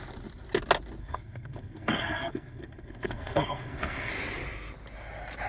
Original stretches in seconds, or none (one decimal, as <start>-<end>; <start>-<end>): 0.0-1.0; 4.1-5.5